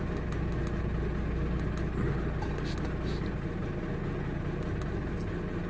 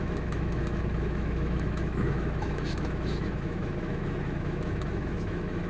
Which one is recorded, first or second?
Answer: first